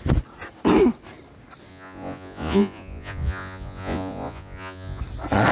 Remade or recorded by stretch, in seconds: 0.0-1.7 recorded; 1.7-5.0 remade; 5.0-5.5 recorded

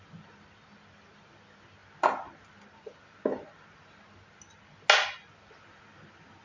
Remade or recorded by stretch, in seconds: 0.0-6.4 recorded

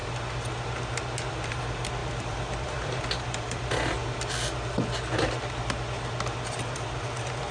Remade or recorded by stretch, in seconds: 0.0-1.3 recorded; 1.3-4.0 remade; 4.0-6.5 recorded; 6.5-7.5 remade

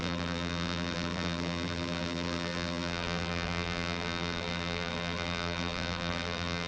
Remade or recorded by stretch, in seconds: 0.0-6.7 remade